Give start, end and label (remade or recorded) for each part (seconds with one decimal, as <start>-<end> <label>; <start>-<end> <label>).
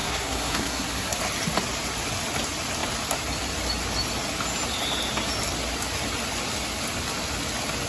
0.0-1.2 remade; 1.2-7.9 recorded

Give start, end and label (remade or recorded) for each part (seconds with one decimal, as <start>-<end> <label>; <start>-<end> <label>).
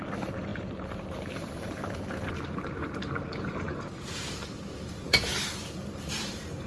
0.0-5.3 remade; 5.3-5.9 recorded; 5.9-6.7 remade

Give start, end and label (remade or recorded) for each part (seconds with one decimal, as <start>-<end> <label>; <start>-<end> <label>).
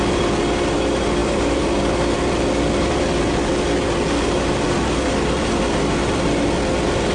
0.0-7.1 recorded